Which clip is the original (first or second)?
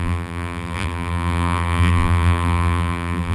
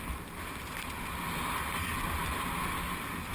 second